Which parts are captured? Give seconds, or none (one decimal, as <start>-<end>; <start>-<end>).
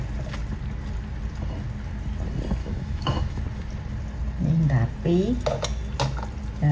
0.0-2.6; 3.4-6.7